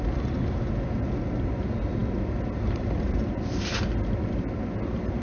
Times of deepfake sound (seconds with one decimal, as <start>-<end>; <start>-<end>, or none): none